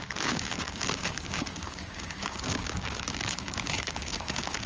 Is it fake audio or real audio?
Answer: fake